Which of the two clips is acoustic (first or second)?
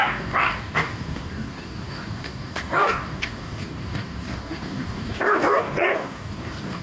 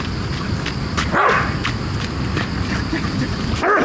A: second